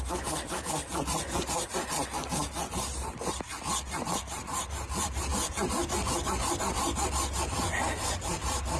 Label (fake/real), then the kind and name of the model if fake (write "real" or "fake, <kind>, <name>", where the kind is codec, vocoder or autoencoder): real